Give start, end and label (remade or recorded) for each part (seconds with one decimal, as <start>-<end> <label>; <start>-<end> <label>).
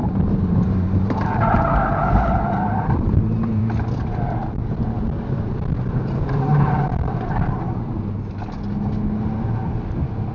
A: 0.0-3.6 remade; 3.6-4.6 recorded; 4.6-7.6 remade; 7.6-10.3 recorded